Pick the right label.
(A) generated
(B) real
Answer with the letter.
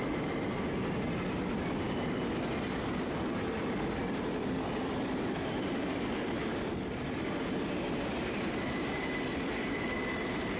B